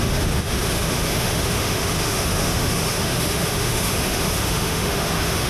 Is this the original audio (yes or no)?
no